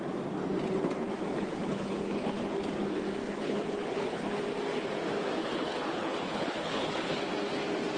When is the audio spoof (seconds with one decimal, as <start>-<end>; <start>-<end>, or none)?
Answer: 1.3-2.4; 3.2-4.3; 5.4-7.2